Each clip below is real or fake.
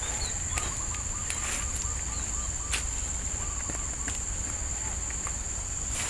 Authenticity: real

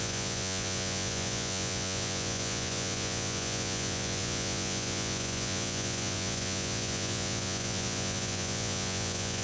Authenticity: fake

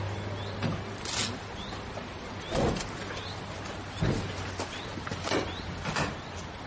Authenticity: real